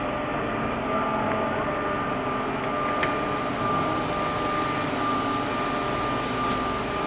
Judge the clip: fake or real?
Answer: real